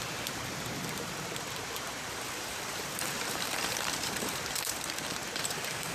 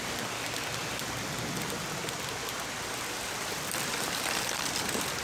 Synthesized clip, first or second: first